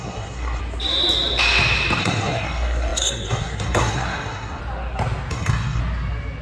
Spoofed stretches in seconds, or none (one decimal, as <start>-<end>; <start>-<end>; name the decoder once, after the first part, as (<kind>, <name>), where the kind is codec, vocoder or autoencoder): 0.0-0.6 (codec, SNAC); 2.0-4.6; 5.3-5.8

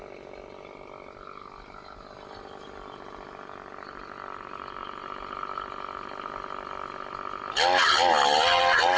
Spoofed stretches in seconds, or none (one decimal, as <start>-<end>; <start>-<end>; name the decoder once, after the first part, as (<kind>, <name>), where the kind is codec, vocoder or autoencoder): none

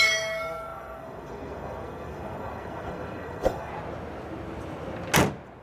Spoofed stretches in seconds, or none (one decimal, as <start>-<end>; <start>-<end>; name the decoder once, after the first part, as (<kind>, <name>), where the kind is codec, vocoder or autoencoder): 0.0-3.7 (codec, SNAC)

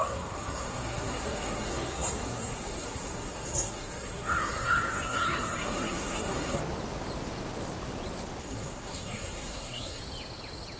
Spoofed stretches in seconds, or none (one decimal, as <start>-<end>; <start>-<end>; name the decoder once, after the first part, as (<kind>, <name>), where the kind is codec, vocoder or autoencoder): 0.0-6.6 (codec, SNAC); 8.4-10.0

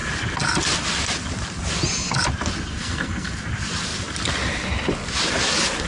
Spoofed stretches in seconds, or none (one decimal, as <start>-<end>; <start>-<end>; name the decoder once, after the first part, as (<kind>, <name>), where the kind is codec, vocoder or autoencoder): 2.7-3.3 (codec, SNAC)

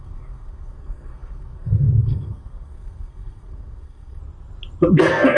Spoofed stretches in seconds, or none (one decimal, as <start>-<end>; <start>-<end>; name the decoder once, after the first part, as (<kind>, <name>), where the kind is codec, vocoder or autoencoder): 0.0-4.2 (codec, SNAC); 4.9-5.4